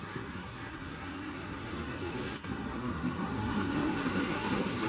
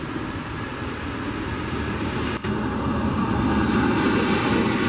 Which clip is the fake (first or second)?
first